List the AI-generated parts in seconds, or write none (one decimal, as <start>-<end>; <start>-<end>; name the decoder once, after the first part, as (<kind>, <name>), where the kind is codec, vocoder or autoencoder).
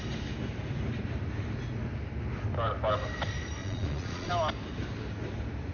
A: 3.6-4.3 (vocoder, Vocos)